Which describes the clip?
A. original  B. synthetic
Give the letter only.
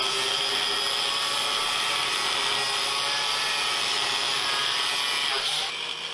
A